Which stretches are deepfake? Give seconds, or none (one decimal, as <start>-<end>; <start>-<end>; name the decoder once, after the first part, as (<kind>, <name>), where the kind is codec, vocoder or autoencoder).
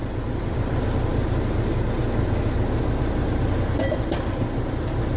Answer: 0.0-1.1 (vocoder, BigVGAN v2); 3.9-5.2